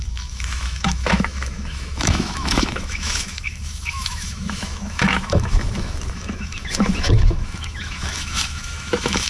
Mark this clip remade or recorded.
remade